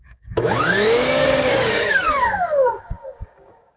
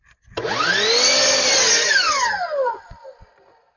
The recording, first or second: second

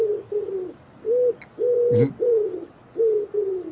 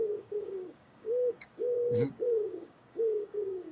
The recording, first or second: first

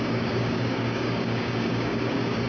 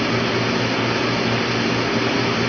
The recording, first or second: second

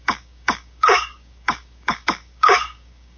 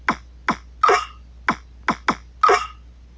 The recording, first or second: second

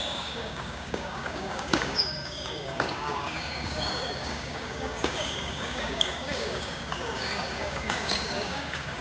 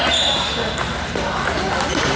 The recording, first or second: second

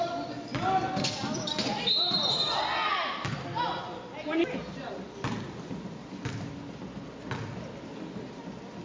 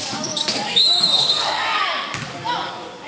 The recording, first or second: first